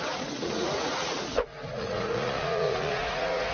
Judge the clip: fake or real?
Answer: fake